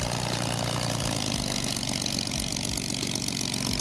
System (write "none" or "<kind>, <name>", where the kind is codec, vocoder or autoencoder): none